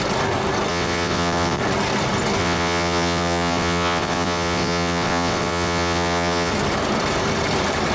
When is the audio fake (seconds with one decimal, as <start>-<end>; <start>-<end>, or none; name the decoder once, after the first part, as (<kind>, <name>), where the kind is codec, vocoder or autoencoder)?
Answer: 0.7-1.6 (vocoder, WaveNeXt); 2.4-6.5